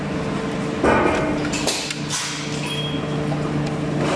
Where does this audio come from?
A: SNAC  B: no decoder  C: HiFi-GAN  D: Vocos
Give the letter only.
B